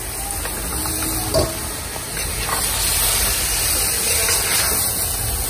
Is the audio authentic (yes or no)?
yes